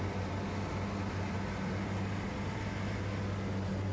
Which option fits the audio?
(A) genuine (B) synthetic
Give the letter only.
A